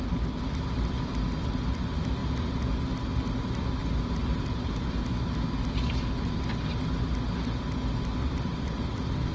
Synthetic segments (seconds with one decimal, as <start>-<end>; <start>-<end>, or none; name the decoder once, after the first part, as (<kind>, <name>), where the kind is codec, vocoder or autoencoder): 3.8-5.2 (vocoder, BigVGAN v2); 8.2-9.3